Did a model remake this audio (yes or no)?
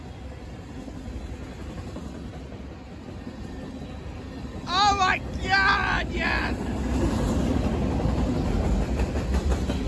no